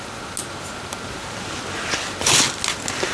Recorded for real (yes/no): yes